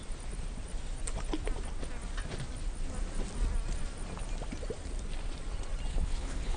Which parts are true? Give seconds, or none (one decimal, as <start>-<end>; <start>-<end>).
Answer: 0.0-5.9